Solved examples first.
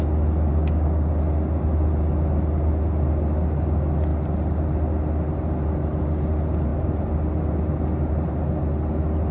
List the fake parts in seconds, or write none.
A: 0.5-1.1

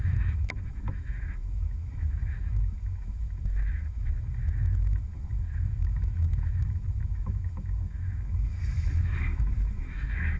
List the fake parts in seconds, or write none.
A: 0.0-10.4

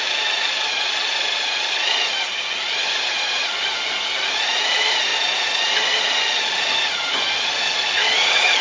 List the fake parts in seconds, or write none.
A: none